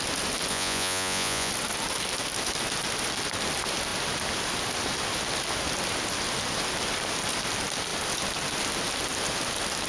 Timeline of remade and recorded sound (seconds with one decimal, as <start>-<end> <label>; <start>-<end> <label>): 0.0-0.5 recorded; 0.5-1.5 remade; 1.5-9.9 recorded

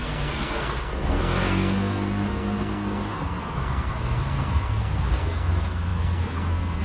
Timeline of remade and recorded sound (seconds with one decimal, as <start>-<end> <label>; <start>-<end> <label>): 0.0-6.8 remade

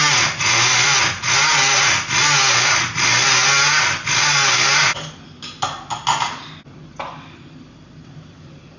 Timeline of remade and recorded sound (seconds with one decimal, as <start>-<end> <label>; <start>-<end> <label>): 0.0-8.8 recorded